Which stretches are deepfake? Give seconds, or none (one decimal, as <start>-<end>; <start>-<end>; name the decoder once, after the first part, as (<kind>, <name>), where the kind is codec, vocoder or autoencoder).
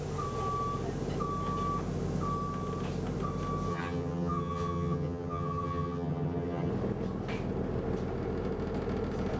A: 3.7-6.7 (vocoder, HiFi-GAN)